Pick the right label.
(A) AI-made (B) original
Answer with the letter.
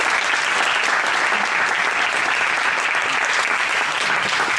B